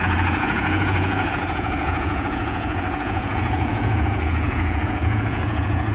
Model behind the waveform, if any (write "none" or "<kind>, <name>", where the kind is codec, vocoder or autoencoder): vocoder, Vocos